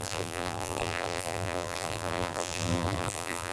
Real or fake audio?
fake